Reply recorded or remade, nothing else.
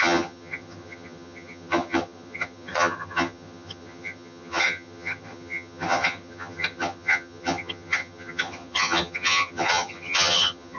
remade